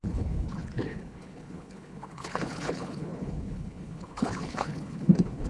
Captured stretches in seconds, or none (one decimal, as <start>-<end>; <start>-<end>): none